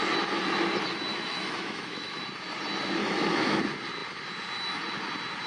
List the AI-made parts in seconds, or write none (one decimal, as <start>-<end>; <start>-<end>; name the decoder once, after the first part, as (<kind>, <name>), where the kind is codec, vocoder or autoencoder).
1.1-2.2 (autoencoder, DAC-VAE); 3.0-3.6